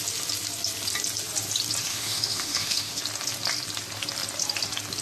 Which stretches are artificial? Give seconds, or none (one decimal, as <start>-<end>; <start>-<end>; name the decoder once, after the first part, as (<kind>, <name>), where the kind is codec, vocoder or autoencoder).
1.9-3.0 (autoencoder, DAC-VAE)